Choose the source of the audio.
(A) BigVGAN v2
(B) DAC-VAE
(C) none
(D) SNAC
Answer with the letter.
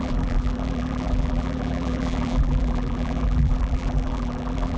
A